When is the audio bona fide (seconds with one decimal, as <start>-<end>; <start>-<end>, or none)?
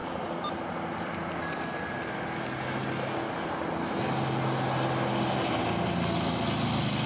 0.0-7.1